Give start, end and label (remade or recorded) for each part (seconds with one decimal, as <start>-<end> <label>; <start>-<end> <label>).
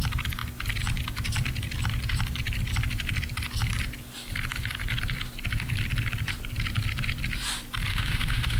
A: 0.0-7.9 recorded; 7.9-8.6 remade